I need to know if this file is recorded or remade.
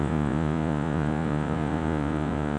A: remade